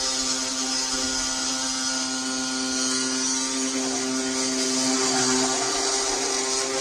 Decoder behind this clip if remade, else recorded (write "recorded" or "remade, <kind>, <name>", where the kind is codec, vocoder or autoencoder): recorded